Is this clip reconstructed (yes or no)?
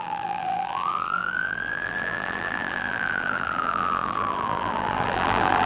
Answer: yes